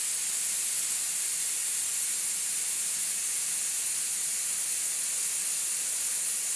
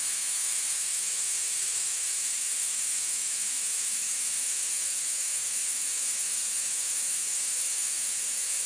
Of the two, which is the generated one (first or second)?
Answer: second